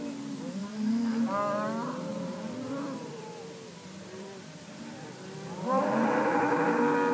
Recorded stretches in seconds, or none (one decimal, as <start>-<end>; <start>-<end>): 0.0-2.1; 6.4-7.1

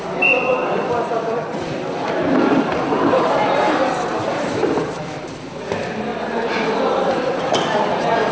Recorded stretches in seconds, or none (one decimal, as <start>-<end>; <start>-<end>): 0.0-0.6; 5.6-6.1; 7.4-8.3

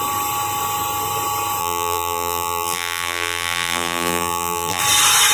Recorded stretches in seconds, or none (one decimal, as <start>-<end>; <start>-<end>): 0.0-1.6; 4.8-5.3

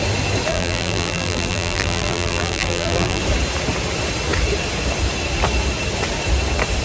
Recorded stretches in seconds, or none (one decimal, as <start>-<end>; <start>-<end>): 0.0-0.5; 3.2-6.8

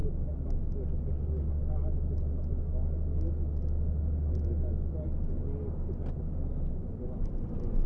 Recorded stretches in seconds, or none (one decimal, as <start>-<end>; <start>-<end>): 0.0-7.9

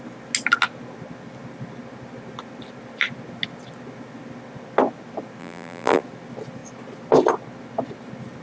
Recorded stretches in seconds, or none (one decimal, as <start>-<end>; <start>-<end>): 0.0-5.4; 6.0-8.4

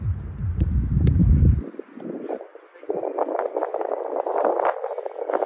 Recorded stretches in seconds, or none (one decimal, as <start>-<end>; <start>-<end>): 0.0-1.2; 2.1-2.5; 4.0-5.5